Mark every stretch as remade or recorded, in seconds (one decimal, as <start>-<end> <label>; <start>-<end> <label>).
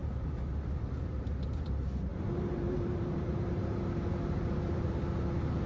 0.0-2.1 recorded; 2.1-4.9 remade; 4.9-5.7 recorded